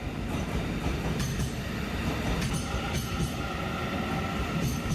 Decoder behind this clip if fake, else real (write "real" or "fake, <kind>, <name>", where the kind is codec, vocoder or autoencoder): real